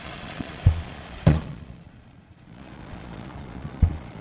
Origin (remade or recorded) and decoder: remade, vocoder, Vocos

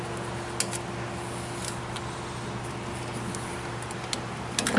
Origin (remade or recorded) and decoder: recorded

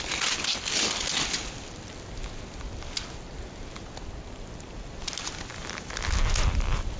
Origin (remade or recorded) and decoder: recorded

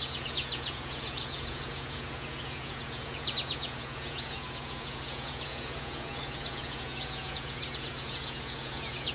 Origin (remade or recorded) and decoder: remade, vocoder, Vocos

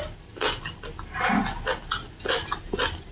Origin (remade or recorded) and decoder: recorded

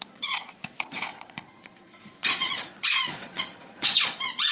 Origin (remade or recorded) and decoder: remade, vocoder, Vocos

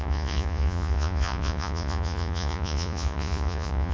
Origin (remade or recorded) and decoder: remade, vocoder, Vocos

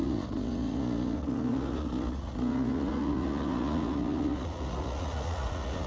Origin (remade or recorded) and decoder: remade, vocoder, Vocos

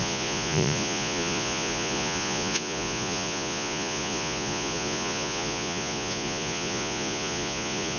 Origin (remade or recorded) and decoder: remade, vocoder, Vocos